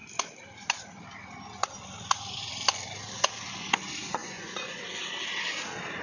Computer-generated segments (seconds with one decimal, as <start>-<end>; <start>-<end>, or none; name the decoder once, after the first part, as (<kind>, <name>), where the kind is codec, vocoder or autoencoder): 4.2-4.8 (vocoder, Vocos)